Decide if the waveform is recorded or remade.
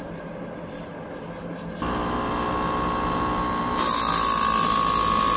recorded